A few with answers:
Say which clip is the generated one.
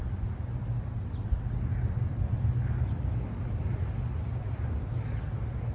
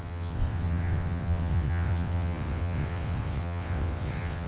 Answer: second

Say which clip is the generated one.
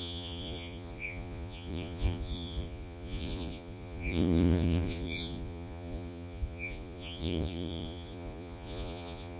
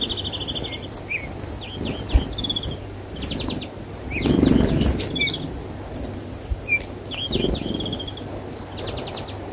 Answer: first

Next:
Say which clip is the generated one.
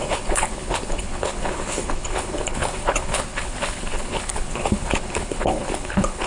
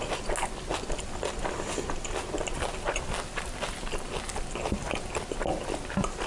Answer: first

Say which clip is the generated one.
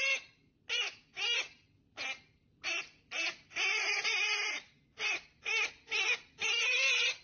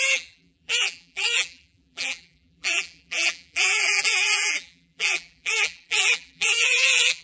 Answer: second